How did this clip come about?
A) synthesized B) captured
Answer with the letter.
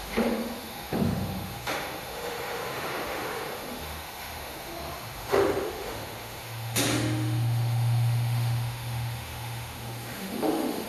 A